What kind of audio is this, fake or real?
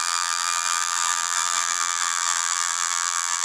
fake